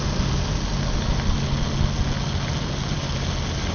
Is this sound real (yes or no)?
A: yes